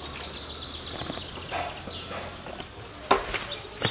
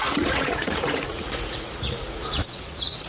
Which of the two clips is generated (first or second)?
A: second